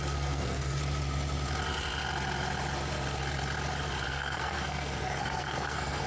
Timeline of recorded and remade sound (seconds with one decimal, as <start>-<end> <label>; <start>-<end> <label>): 0.0-0.8 remade; 0.8-4.1 recorded; 4.1-6.1 remade